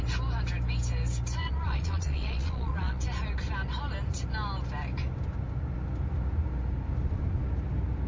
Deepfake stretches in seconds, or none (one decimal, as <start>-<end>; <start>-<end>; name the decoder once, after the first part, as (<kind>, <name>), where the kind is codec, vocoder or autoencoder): 1.4-3.0 (vocoder, Vocos)